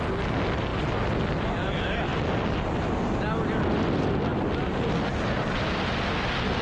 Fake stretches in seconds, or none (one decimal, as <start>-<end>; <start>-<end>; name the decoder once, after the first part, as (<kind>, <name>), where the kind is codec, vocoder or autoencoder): none